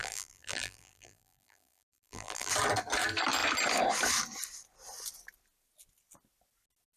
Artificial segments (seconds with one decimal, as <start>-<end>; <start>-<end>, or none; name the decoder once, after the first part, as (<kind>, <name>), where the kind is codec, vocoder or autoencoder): 0.0-2.5 (vocoder, BigVGAN v2)